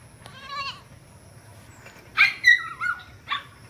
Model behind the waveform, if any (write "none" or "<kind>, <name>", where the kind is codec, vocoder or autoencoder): none